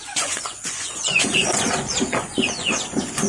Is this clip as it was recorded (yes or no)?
no